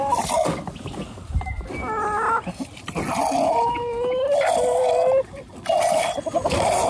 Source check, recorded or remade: recorded